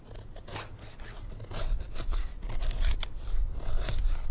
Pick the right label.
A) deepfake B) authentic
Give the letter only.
B